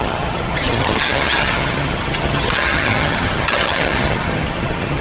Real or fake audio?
fake